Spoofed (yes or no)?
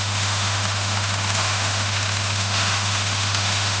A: yes